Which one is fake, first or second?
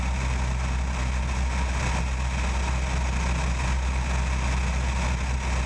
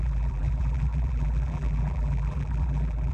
second